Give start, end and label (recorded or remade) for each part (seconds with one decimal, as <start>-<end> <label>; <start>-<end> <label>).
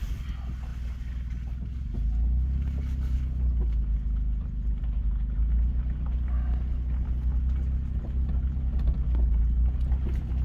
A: 0.0-10.4 recorded